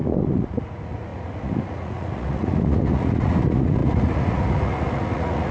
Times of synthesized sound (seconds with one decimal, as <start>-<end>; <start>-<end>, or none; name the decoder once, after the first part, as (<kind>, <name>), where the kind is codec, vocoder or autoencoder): 0.0-5.5 (vocoder, Vocos)